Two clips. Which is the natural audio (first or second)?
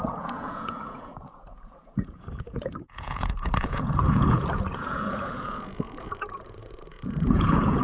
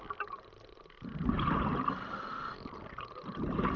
second